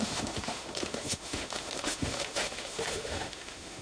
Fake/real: fake